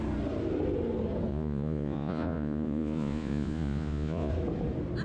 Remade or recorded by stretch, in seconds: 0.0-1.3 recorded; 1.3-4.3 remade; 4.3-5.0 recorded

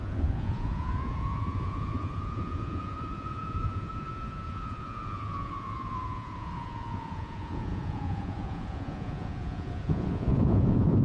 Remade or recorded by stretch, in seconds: 0.0-11.0 remade